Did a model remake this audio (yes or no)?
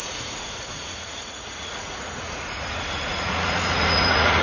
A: yes